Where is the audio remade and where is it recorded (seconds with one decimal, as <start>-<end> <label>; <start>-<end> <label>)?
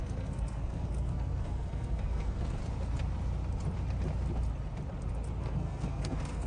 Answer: 0.0-2.6 remade; 2.6-5.4 recorded; 5.4-6.5 remade